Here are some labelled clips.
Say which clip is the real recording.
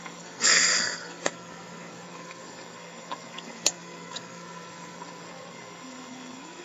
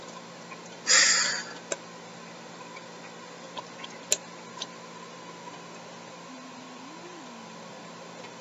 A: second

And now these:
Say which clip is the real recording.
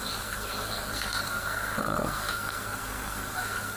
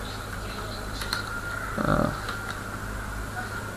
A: second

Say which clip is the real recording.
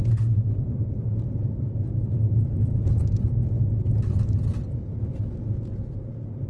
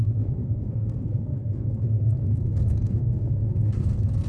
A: first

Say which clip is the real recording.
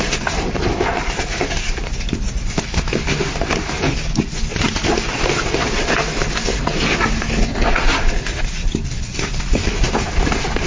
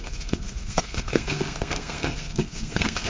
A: first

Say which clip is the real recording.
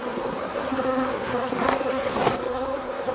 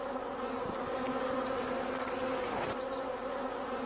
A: second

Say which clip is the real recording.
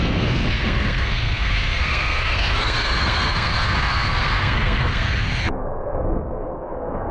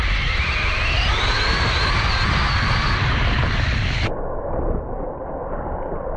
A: second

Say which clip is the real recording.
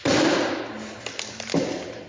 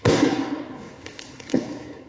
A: first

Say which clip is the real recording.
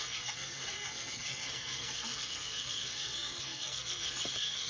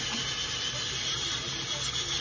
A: second